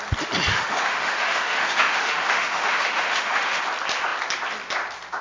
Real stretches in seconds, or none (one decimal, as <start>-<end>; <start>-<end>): 0.0-0.5; 3.6-5.2

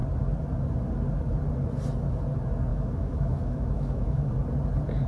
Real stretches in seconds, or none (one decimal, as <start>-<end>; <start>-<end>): 0.0-2.7; 4.3-5.1

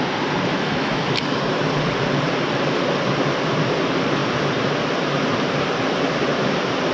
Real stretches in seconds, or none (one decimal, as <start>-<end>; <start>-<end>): 0.0-0.5; 1.0-6.9